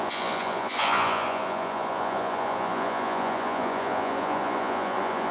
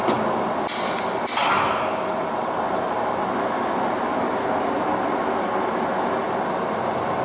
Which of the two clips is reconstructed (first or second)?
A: first